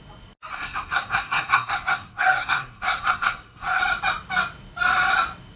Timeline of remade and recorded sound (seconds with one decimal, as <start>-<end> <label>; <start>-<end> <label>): 0.0-0.5 recorded; 0.5-3.8 remade; 3.8-5.5 recorded